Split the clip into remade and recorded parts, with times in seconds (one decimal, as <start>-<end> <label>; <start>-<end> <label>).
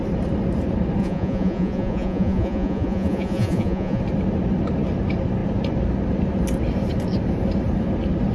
0.0-1.0 recorded; 1.0-4.0 remade; 4.0-8.3 recorded